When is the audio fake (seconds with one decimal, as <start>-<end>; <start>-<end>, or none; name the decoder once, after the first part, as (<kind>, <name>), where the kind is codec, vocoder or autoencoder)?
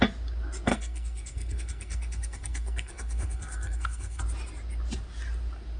0.7-4.2 (codec, SNAC)